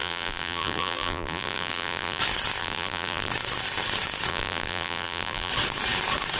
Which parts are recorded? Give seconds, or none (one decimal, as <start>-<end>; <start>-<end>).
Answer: 2.2-2.6; 3.3-4.3; 5.5-6.4